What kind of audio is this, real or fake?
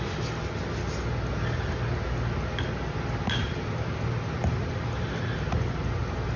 real